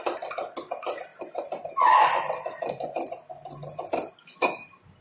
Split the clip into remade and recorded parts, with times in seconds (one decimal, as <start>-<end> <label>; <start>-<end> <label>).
0.0-5.0 recorded